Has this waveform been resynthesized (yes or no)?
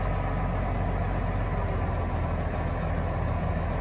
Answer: no